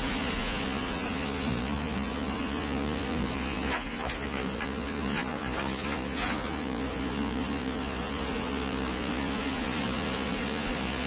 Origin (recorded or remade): remade